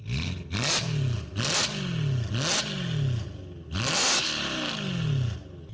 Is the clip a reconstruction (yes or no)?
no